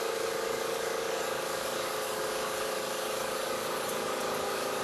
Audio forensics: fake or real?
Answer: fake